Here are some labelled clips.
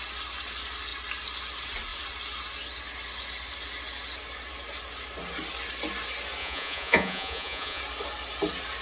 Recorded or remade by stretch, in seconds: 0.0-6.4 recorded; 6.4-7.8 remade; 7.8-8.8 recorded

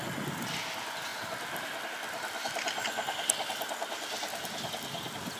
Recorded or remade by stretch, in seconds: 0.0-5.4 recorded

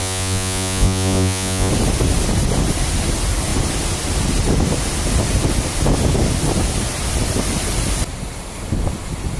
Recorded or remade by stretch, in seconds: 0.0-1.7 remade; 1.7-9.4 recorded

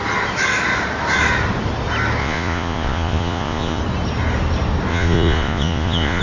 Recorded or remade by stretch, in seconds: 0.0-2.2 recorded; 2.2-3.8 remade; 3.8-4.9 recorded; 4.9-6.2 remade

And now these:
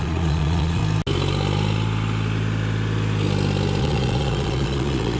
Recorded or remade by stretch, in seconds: 0.0-0.8 remade; 0.8-3.8 recorded; 3.8-5.2 remade